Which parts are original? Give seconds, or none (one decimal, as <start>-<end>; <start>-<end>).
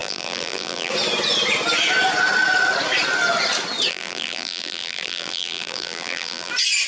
0.9-3.9; 6.5-6.9